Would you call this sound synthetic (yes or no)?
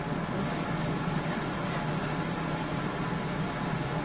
no